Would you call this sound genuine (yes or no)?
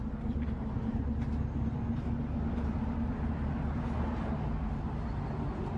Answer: yes